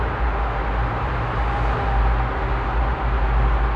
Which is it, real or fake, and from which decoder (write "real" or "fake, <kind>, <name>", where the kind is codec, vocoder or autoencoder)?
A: real